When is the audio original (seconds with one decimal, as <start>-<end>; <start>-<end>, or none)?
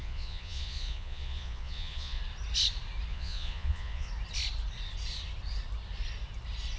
2.2-3.1; 4.1-6.8